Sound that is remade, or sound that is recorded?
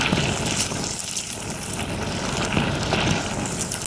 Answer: recorded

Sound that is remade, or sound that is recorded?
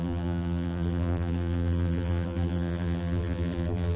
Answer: remade